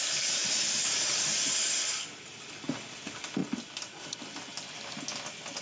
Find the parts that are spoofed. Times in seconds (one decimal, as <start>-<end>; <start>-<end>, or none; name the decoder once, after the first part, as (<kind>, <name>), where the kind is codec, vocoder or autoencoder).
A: none